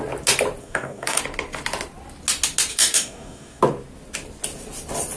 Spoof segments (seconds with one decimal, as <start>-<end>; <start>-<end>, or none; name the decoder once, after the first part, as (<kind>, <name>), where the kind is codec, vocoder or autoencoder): 0.6-1.2 (codec, DAC); 2.7-3.6